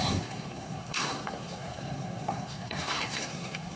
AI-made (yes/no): yes